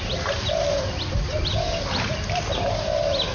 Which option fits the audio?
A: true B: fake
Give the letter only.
A